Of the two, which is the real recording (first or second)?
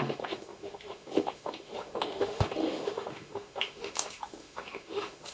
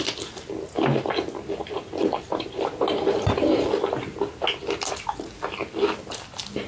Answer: second